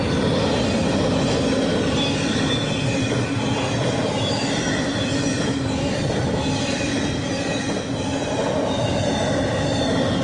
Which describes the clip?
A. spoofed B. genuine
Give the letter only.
B